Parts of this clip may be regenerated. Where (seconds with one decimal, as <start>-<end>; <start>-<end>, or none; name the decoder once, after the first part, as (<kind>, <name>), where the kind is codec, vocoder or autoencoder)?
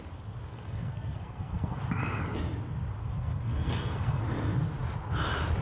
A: 0.5-1.8 (codec, SNAC); 3.0-4.2